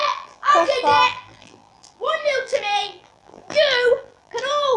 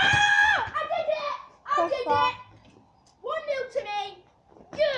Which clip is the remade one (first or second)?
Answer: first